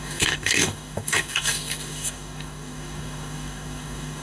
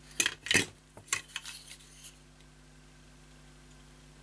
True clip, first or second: second